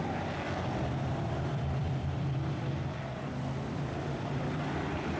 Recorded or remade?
remade